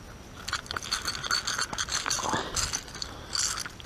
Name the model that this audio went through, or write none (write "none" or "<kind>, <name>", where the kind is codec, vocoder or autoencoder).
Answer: none